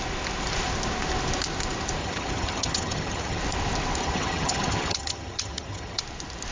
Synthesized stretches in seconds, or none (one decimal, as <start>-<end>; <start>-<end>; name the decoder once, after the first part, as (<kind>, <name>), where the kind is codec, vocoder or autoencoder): 2.0-3.4 (vocoder, HiFi-GAN); 4.0-6.0